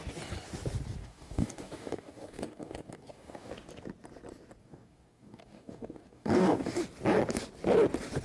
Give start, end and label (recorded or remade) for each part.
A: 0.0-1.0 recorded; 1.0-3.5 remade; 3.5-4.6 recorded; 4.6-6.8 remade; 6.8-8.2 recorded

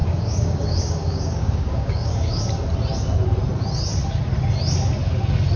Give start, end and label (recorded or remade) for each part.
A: 0.0-2.4 remade; 2.4-5.6 recorded

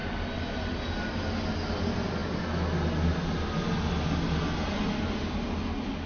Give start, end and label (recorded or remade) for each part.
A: 0.0-6.1 recorded

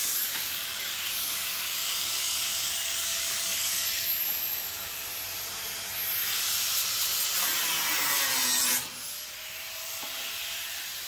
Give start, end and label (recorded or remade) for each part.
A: 0.0-5.0 remade; 5.0-11.1 recorded